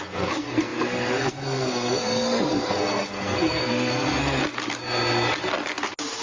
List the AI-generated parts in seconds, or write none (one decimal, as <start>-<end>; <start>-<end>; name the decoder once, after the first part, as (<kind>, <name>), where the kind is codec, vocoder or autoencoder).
0.0-4.4 (codec, SNAC)